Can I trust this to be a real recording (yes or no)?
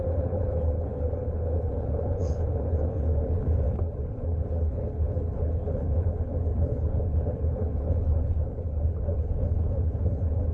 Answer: no